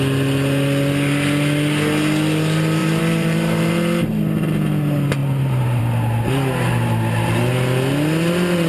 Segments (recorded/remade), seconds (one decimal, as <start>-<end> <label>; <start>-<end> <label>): 0.0-2.8 recorded; 2.8-3.7 remade; 3.7-5.2 recorded; 5.2-5.8 remade; 5.8-8.7 recorded